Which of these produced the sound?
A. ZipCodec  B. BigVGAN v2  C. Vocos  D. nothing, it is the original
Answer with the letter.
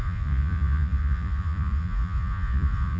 C